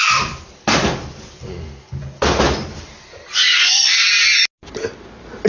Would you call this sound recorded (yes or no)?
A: yes